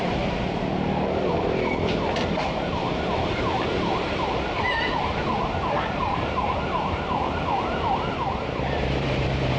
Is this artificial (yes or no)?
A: yes